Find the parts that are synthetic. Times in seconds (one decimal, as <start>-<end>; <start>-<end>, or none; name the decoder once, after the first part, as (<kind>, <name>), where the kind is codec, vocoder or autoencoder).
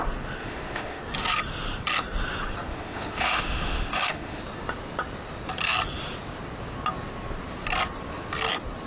0.4-1.0 (autoencoder, DAC-VAE); 2.7-4.4